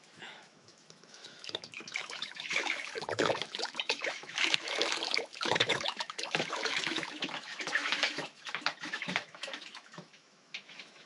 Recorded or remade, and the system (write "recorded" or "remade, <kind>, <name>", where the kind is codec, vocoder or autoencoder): remade, autoencoder, DAC-VAE